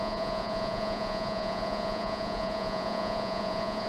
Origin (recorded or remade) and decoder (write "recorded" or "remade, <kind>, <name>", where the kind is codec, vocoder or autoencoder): remade, vocoder, Vocos